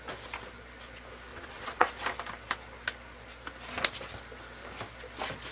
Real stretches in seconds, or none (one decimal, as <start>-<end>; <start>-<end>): 0.0-1.3; 1.9-5.5